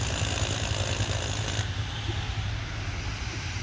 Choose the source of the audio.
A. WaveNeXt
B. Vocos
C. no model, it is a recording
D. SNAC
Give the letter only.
C